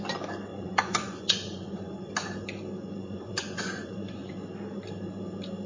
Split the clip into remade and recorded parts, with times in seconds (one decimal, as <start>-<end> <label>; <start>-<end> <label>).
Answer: 0.0-0.5 recorded; 0.5-2.1 remade; 2.1-3.0 recorded; 3.0-4.3 remade; 4.3-5.7 recorded